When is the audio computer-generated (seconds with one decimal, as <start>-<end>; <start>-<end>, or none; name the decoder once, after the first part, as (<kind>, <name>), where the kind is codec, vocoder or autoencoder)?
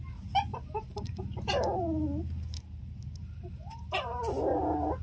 0.5-1.8 (vocoder, BigVGAN v2); 3.2-4.2